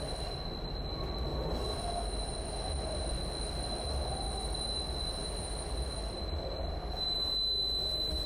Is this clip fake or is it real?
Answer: real